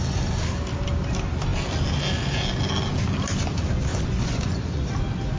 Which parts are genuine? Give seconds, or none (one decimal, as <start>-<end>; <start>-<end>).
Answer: 0.0-3.9; 4.8-5.4